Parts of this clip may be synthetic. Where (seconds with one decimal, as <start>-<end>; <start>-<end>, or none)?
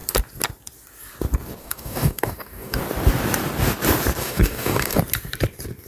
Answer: 1.6-2.8; 4.2-5.0